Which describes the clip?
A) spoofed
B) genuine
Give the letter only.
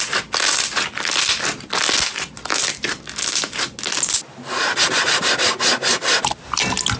B